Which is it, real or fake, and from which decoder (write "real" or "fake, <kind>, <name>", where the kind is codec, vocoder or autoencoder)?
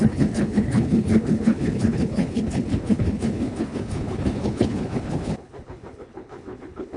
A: fake, codec, HILCodec